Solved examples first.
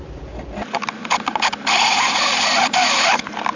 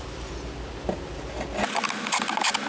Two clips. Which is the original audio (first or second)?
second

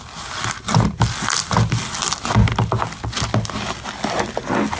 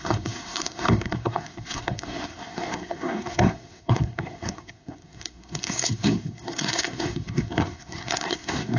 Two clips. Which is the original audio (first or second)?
first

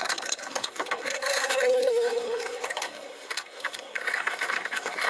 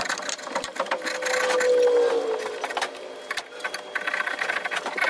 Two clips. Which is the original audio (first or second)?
second